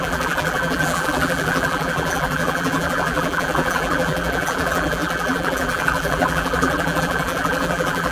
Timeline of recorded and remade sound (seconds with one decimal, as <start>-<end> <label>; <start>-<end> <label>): 0.0-8.1 remade